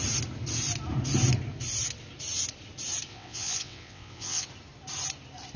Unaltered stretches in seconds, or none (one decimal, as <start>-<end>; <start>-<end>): 0.0-3.1; 4.5-5.6